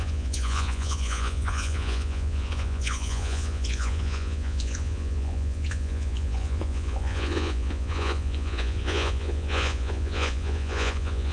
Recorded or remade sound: remade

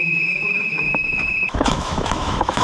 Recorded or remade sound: remade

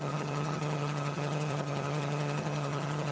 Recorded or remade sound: remade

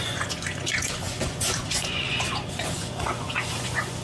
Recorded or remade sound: remade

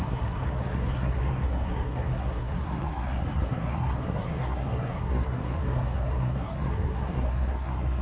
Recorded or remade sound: remade